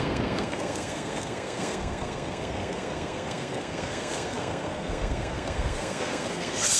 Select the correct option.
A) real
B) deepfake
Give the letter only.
B